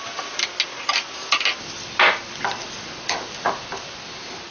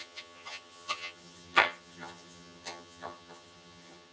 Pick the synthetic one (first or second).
second